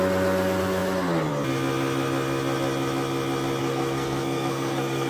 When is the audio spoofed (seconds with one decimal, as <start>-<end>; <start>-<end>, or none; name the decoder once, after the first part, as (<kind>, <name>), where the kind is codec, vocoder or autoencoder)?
3.6-5.1 (codec, SNAC)